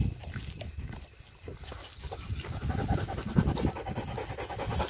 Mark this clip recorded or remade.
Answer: recorded